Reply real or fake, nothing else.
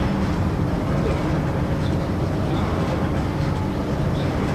real